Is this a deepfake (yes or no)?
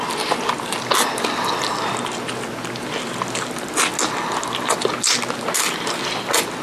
no